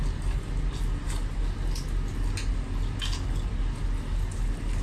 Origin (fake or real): real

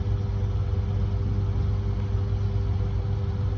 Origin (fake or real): real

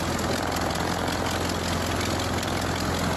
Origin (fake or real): real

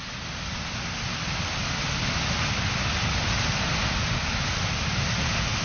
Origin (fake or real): real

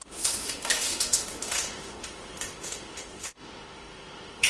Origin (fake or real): fake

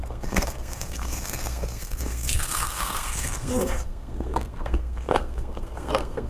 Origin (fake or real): fake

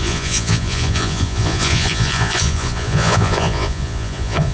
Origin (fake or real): fake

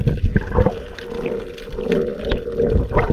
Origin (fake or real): real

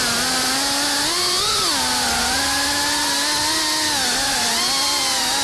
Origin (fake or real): real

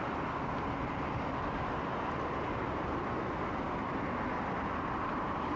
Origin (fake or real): real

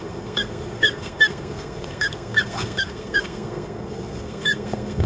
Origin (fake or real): fake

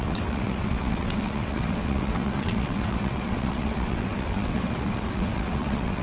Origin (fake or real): fake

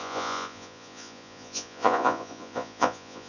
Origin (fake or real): fake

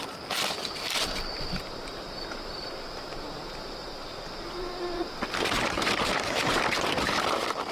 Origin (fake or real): fake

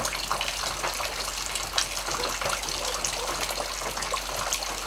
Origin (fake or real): real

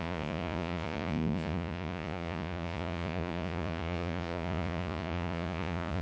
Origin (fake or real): fake